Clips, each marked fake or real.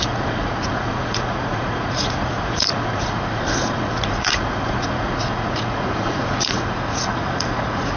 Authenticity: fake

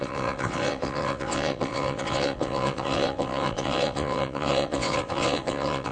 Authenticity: fake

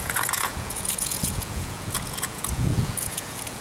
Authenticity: fake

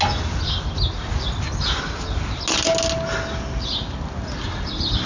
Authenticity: real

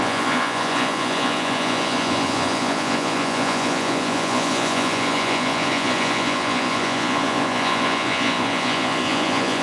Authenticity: fake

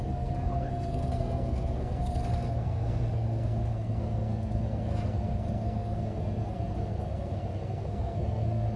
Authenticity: fake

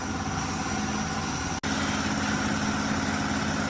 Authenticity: real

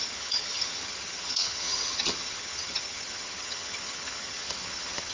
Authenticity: fake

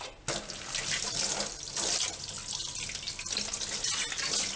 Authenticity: real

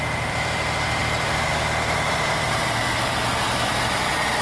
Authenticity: fake